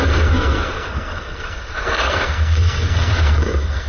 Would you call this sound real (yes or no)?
no